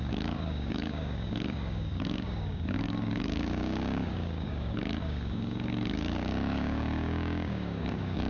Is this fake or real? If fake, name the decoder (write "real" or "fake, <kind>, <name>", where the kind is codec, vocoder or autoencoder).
fake, codec, DAC